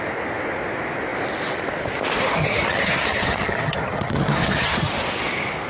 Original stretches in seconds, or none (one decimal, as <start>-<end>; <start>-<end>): 0.0-2.4; 4.9-5.7